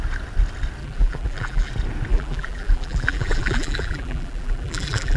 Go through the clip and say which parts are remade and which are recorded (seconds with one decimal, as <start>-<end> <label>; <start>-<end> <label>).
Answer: 0.0-0.8 recorded; 0.8-1.7 remade; 1.7-2.1 recorded; 2.1-5.2 remade